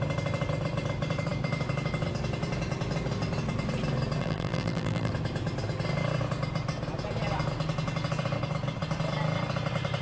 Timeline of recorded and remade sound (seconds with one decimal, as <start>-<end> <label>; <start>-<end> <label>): 0.0-4.2 recorded; 4.2-5.1 remade; 5.1-10.0 recorded